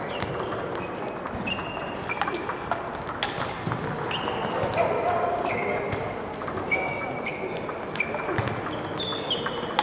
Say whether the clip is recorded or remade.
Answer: recorded